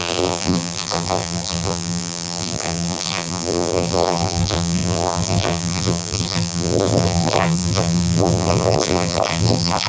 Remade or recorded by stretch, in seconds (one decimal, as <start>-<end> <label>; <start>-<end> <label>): 0.0-9.9 remade